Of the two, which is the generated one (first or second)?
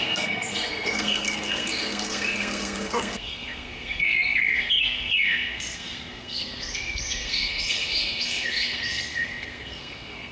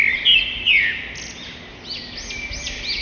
first